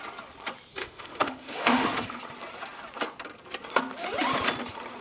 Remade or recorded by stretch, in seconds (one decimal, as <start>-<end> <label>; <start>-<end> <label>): 0.0-0.8 recorded; 0.8-2.2 remade; 2.2-5.0 recorded